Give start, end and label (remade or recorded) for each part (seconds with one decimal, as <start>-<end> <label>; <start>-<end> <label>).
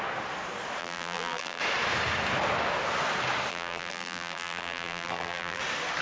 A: 0.0-0.8 recorded; 0.8-1.6 remade; 1.6-3.5 recorded; 3.5-5.6 remade; 5.6-6.0 recorded